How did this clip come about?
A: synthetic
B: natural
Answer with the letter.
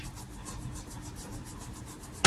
B